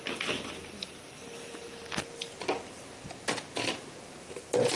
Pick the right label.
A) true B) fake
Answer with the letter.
A